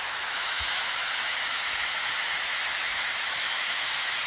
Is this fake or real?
fake